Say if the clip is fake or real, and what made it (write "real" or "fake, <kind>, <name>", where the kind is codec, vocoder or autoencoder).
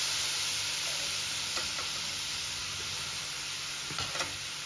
fake, vocoder, BigVGAN v2